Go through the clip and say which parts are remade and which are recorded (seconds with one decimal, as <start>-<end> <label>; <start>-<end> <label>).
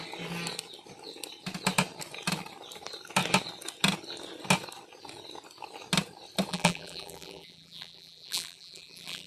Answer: 0.0-6.5 recorded; 6.5-9.3 remade